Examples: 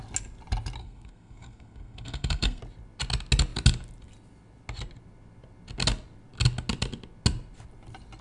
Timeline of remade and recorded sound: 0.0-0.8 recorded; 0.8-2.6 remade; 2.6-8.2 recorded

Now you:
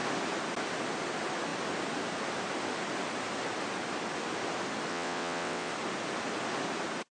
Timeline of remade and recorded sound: 0.0-4.9 recorded; 4.9-5.7 remade; 5.7-7.2 recorded